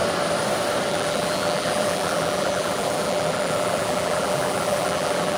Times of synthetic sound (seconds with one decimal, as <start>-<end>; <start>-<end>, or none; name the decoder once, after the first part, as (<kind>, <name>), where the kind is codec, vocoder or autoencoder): 0.9-5.4 (vocoder, BigVGAN v2)